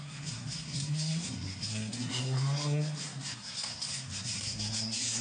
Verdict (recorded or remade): remade